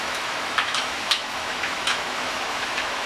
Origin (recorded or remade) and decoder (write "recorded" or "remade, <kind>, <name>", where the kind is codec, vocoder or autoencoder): remade, autoencoder, DAC-VAE